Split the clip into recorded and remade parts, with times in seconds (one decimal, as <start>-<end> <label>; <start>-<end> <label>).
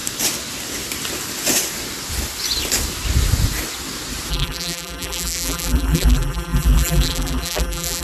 0.0-4.3 recorded; 4.3-8.0 remade